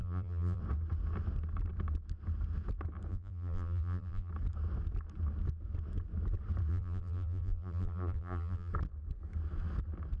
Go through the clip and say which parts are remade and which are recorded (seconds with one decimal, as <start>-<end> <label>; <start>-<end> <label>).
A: 0.0-0.6 remade; 0.6-3.1 recorded; 3.1-4.3 remade; 4.3-6.7 recorded; 6.7-8.7 remade; 8.7-10.2 recorded